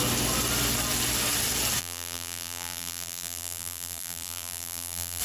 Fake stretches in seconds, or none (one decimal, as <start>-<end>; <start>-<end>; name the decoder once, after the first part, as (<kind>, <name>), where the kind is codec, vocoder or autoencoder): 1.8-5.2 (vocoder, BigVGAN v2)